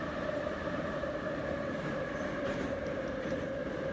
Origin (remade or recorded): remade